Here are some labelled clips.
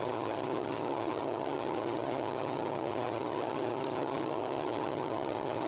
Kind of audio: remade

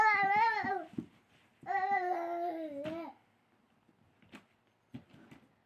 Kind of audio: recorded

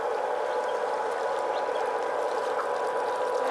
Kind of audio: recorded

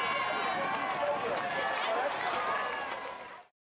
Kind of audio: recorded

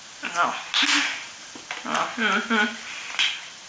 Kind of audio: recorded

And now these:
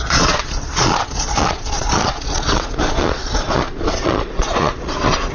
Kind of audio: remade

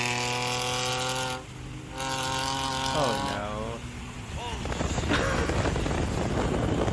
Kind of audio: recorded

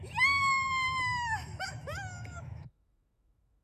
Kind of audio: remade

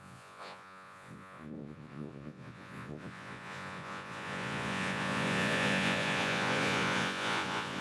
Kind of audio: remade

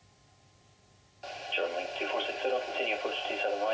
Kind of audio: recorded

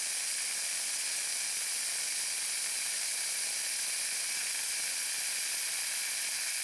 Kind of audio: recorded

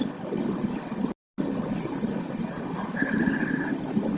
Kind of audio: recorded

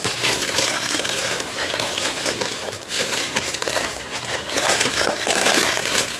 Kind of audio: remade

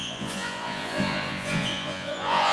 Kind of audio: remade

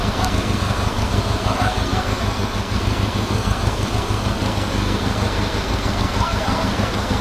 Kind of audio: remade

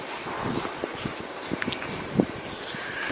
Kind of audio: recorded